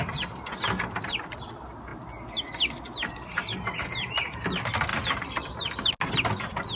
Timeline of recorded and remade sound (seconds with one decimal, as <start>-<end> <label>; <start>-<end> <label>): 0.0-6.8 recorded